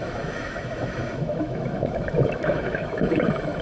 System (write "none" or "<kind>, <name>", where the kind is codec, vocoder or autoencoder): autoencoder, DAC-VAE